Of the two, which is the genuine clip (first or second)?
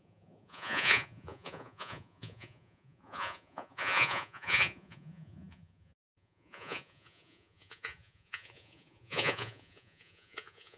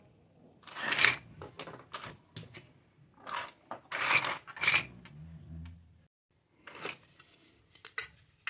second